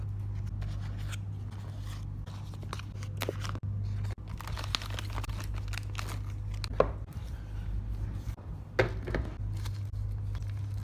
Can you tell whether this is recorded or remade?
recorded